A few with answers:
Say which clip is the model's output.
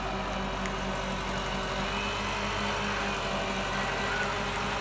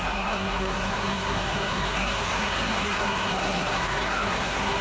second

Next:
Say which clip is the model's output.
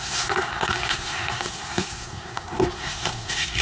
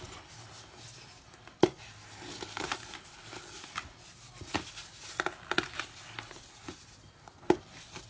first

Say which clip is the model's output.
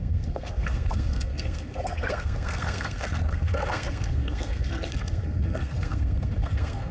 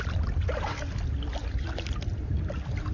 first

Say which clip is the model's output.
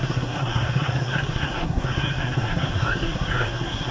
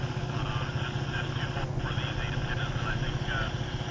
first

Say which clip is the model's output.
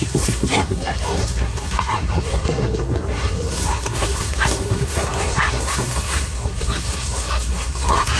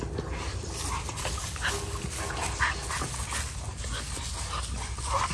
first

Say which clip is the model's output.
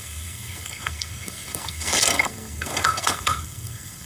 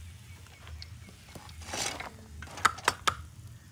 first